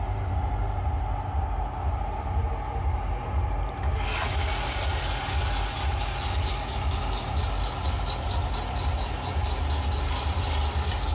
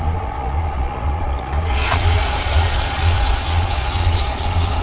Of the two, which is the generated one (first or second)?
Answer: second